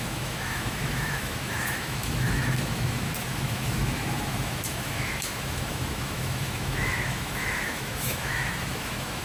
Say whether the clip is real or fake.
fake